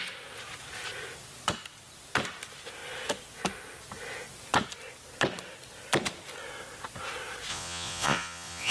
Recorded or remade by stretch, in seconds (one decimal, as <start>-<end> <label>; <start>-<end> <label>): 0.0-7.5 recorded; 7.5-8.7 remade